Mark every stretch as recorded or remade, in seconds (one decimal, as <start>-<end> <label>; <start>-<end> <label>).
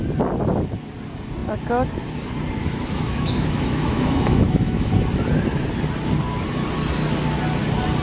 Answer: 0.0-2.6 recorded; 2.6-4.9 remade; 4.9-8.0 recorded